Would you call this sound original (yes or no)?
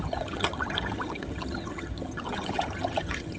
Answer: no